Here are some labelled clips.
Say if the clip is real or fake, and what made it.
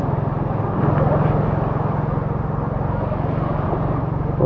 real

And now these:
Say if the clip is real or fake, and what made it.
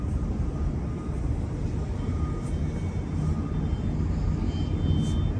real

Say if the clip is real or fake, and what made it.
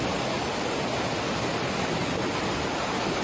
real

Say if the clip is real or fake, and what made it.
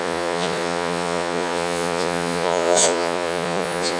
fake, vocoder, Vocos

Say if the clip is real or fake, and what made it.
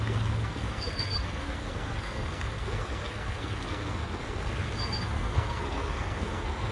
fake, codec, SNAC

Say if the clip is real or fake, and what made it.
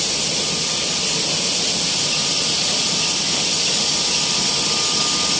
real